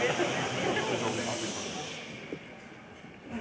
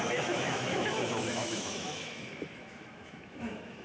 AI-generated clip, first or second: second